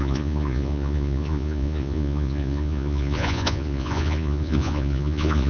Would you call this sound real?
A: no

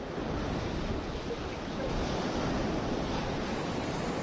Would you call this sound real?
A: yes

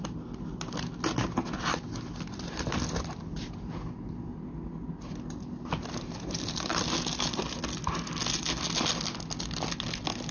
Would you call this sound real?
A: yes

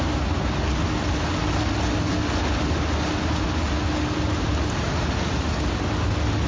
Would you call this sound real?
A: yes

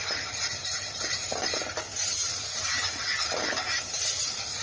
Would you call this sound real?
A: yes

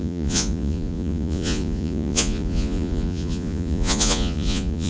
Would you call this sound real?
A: no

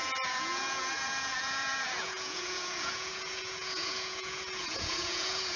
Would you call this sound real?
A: no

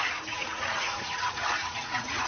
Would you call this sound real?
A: no